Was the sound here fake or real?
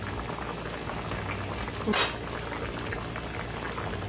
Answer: real